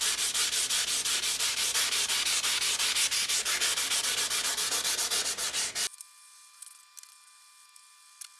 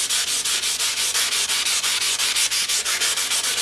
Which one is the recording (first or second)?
first